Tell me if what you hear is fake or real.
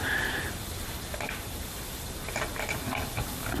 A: real